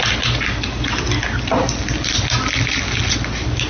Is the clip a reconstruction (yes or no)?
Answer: no